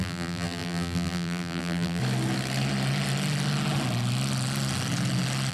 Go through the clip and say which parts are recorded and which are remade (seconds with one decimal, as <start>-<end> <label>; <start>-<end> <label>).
0.0-2.0 remade; 2.0-5.5 recorded